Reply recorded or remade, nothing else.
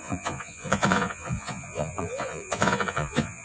remade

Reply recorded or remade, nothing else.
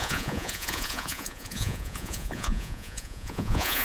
remade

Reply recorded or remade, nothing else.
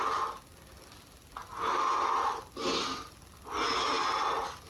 recorded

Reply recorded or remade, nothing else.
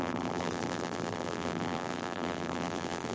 remade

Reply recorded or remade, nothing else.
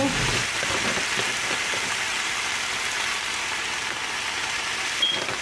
recorded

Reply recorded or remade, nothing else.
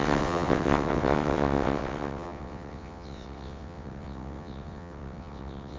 remade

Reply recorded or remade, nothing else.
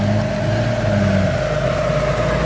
recorded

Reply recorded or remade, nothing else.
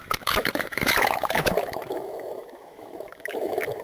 remade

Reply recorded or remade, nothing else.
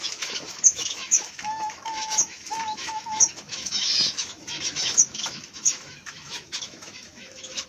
remade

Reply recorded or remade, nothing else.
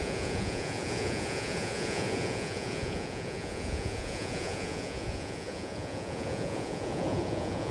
remade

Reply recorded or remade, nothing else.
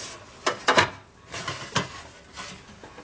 recorded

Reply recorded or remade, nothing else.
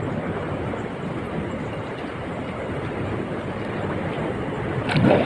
recorded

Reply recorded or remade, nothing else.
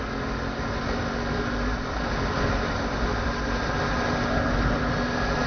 recorded